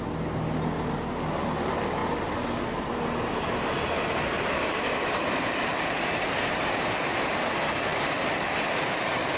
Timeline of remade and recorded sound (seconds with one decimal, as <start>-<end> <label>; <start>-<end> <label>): 0.0-9.4 recorded